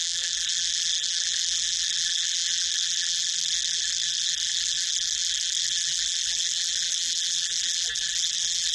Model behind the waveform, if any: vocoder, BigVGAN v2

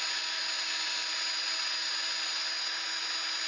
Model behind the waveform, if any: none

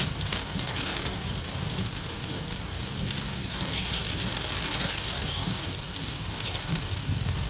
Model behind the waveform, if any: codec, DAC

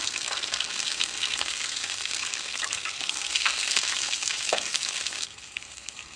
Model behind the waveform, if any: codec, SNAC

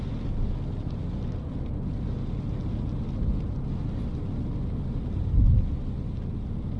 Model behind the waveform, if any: none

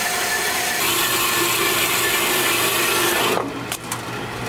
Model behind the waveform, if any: none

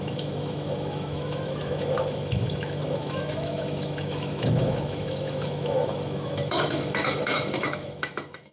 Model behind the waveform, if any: autoencoder, DAC-VAE